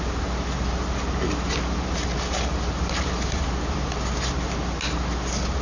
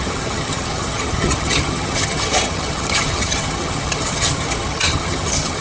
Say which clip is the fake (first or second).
second